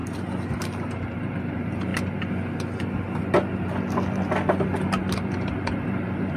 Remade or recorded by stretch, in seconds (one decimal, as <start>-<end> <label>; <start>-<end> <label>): 0.0-1.9 remade; 1.9-5.1 recorded; 5.1-6.4 remade